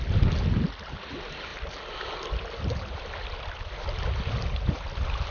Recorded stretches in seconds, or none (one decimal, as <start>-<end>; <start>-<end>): 0.0-5.3